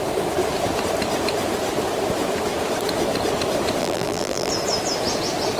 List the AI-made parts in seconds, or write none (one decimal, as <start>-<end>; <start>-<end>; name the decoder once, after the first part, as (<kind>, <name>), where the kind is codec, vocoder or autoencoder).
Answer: 3.8-4.5 (vocoder, BigVGAN v2)